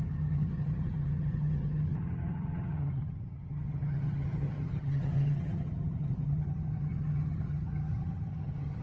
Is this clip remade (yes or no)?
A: yes